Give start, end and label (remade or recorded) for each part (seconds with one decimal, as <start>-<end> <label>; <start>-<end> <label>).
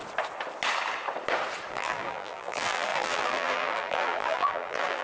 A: 0.0-1.7 recorded; 1.7-5.0 remade